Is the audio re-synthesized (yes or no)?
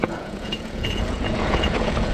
yes